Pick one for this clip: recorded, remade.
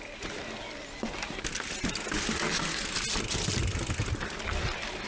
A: recorded